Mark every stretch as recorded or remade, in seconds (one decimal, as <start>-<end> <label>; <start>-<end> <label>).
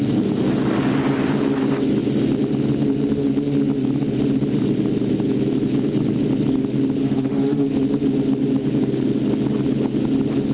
0.0-7.0 recorded; 7.0-7.7 remade; 7.7-10.5 recorded